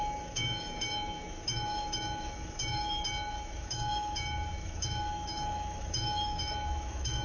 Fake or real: fake